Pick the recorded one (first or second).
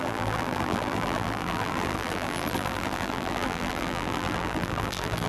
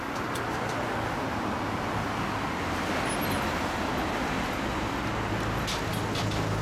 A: second